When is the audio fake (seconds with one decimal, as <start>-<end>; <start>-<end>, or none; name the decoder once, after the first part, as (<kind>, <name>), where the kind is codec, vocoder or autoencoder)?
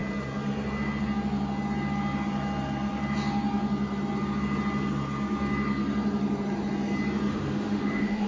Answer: 7.3-8.3 (autoencoder, DAC-VAE)